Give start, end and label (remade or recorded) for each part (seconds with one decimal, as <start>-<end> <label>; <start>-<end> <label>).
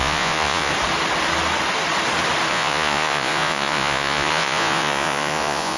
0.0-0.7 remade; 0.7-2.5 recorded; 2.5-5.8 remade